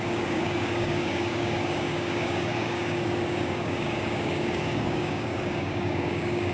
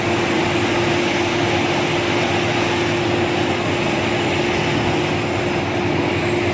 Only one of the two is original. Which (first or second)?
second